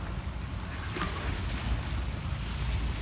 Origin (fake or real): real